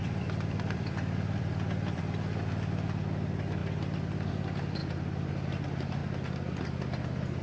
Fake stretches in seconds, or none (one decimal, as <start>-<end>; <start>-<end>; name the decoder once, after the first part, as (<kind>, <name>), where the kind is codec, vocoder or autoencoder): 0.0-2.0 (vocoder, BigVGAN v2); 4.8-5.3